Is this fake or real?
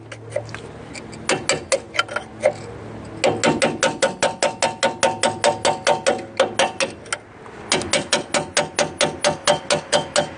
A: real